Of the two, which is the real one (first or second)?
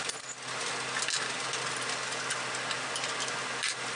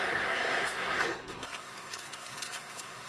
first